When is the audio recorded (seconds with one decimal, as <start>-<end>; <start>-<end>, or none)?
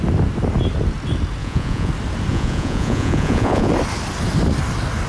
0.0-1.4; 1.9-2.3; 3.7-5.1